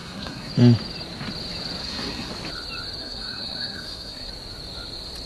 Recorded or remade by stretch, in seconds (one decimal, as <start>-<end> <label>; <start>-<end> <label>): 0.0-0.5 remade; 0.5-1.8 recorded; 1.8-2.3 remade; 2.3-3.0 recorded; 3.0-4.3 remade; 4.3-5.3 recorded